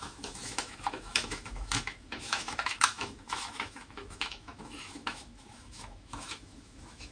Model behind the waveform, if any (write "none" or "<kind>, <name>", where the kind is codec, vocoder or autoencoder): autoencoder, DAC-VAE